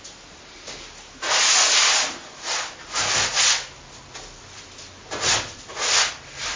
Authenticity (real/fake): real